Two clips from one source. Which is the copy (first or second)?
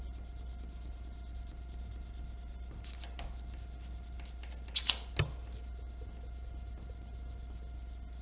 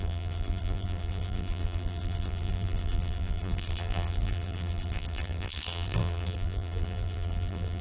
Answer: second